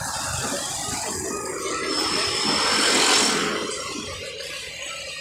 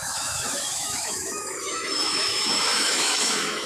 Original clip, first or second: first